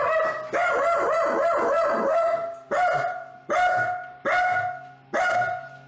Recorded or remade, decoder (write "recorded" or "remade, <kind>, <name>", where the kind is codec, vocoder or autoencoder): recorded